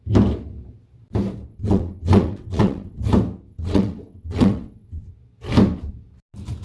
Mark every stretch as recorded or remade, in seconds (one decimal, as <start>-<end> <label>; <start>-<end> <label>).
0.0-1.5 recorded; 1.5-3.0 remade; 3.0-3.5 recorded; 3.5-5.1 remade; 5.1-6.6 recorded